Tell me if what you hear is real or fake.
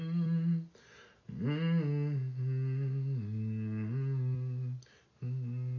real